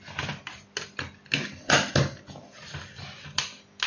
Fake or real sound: real